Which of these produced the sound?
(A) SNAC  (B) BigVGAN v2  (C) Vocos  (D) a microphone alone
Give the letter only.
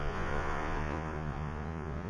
C